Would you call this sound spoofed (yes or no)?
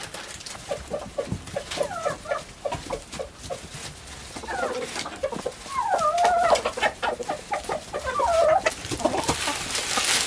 no